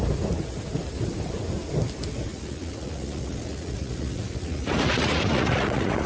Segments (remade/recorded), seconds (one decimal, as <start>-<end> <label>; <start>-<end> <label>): 0.0-2.3 recorded; 2.3-6.1 remade